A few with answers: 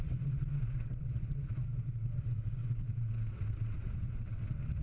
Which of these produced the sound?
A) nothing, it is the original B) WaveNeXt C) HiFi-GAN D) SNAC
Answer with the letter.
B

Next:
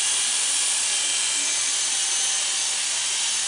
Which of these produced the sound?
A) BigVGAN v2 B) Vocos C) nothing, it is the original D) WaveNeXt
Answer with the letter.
C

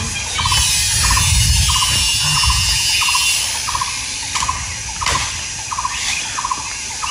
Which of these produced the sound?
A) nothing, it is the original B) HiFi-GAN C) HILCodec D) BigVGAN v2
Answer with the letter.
A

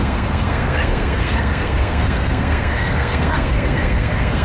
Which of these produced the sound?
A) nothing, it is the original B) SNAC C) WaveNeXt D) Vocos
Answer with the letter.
B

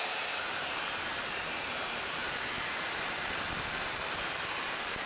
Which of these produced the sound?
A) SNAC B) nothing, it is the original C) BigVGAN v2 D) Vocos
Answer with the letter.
C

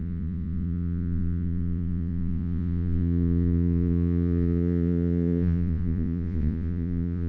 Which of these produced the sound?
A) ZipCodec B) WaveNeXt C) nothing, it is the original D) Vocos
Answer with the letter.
D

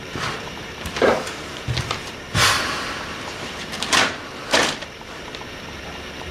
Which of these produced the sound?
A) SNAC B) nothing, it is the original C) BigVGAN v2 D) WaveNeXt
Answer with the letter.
C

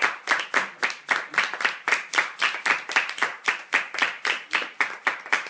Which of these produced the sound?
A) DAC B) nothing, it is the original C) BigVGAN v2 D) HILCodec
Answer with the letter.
B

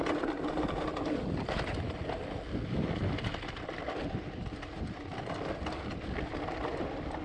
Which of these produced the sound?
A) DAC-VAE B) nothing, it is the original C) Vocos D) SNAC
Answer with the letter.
B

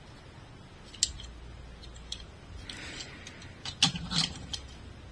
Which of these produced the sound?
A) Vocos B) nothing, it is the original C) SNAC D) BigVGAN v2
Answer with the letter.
B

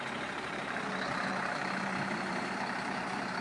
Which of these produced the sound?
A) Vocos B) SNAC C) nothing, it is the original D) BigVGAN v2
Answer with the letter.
D